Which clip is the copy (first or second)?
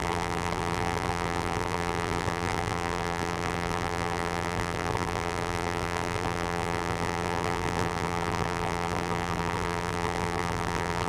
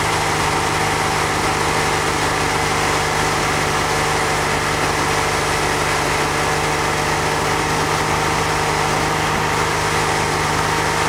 first